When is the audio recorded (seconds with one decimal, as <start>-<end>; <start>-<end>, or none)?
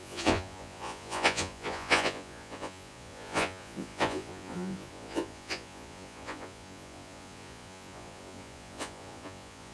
none